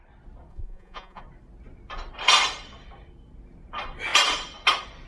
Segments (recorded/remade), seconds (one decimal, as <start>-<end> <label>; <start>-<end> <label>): 0.0-0.5 recorded; 0.5-1.2 remade; 1.2-5.1 recorded